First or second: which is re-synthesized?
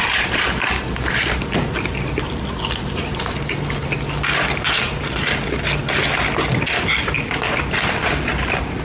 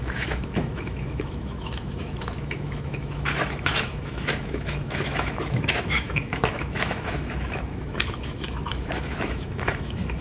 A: second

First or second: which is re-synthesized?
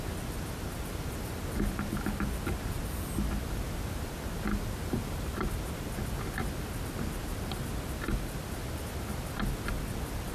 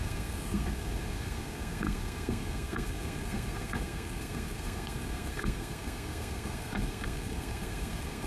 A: second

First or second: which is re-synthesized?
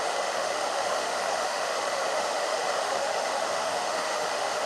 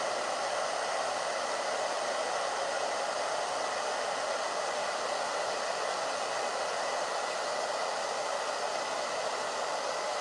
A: first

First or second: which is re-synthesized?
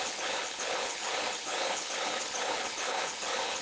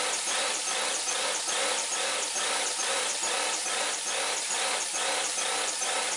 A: first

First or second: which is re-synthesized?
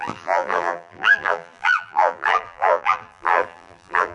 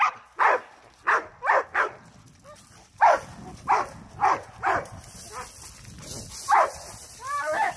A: first